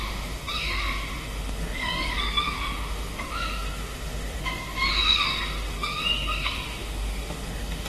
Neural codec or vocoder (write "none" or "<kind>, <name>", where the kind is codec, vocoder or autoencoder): autoencoder, DAC-VAE